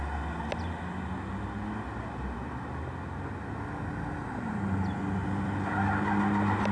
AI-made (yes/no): no